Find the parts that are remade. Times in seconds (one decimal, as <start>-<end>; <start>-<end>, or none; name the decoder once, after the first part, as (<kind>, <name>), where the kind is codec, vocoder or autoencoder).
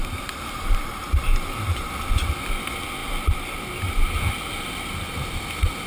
0.0-1.9 (vocoder, BigVGAN v2)